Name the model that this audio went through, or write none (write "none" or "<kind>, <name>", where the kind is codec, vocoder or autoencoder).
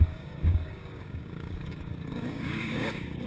codec, DAC